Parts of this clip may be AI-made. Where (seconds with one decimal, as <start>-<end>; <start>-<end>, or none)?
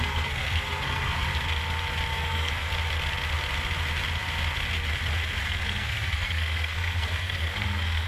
0.0-1.3; 2.1-2.7; 5.4-8.1